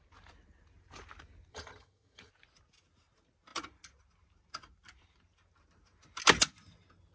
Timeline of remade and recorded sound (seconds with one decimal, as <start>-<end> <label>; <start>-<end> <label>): 0.0-1.5 recorded; 1.5-2.3 remade; 2.3-7.1 recorded